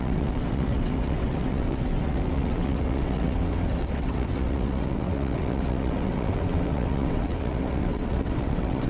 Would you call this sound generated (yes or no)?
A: yes